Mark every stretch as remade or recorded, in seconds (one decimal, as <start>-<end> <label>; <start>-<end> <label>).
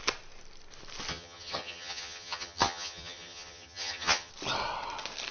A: 0.0-1.1 recorded; 1.1-4.3 remade; 4.3-5.3 recorded